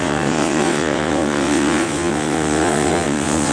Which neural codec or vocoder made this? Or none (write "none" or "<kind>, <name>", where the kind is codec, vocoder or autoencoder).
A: vocoder, WaveNeXt